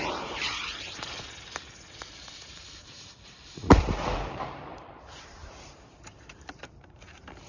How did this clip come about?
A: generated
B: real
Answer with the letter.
A